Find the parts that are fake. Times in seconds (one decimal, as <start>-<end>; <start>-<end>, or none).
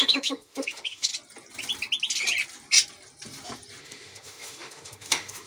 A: 0.0-1.1; 3.8-5.5